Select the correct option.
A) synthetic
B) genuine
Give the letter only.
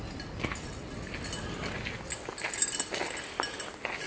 B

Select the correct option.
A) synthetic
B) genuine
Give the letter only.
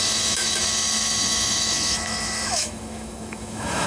A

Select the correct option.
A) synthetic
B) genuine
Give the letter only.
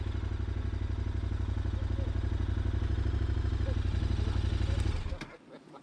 B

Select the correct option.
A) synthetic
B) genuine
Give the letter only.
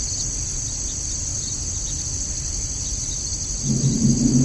B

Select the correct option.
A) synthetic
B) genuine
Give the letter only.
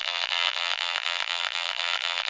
A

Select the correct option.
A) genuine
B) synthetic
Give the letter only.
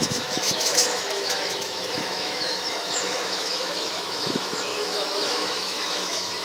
B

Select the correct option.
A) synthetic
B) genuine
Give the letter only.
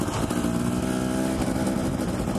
B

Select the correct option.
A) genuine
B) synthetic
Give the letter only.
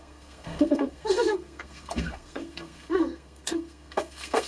B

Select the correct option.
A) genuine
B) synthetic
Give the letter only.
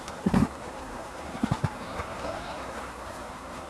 B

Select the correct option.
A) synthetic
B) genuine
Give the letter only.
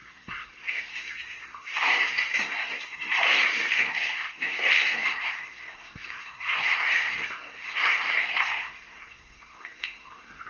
A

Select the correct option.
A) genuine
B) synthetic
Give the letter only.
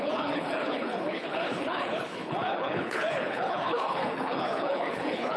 B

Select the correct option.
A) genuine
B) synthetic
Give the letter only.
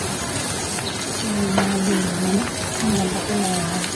A